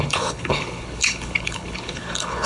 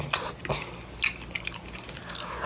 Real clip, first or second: second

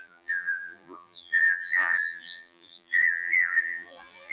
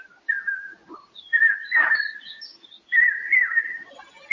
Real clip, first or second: second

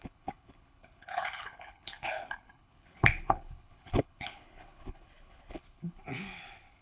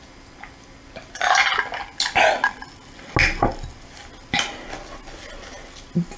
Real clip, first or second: second